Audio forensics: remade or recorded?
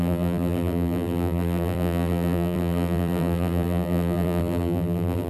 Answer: remade